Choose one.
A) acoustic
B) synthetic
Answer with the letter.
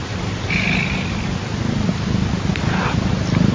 A